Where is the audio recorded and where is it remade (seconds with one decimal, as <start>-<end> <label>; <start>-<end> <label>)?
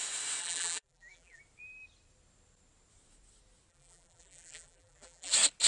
0.0-0.4 recorded; 0.4-1.4 remade; 1.4-3.7 recorded; 3.7-5.3 remade; 5.3-5.7 recorded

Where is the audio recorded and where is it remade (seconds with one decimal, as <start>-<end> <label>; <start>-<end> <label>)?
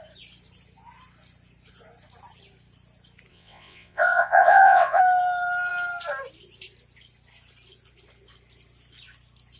0.0-3.3 recorded; 3.3-5.0 remade; 5.0-9.6 recorded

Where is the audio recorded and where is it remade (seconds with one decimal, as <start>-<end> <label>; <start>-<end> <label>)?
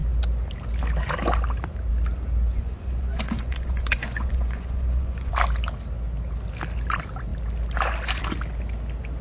0.0-2.5 recorded; 2.5-5.3 remade; 5.3-9.2 recorded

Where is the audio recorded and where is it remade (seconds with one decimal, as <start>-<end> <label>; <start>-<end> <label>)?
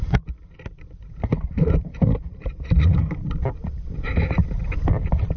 0.0-1.3 recorded; 1.3-4.5 remade; 4.5-5.4 recorded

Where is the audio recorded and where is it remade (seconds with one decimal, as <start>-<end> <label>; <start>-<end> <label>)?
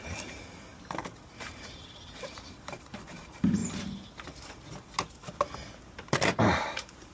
0.0-0.7 remade; 0.7-1.3 recorded; 1.3-3.6 remade; 3.6-6.4 recorded; 6.4-7.1 remade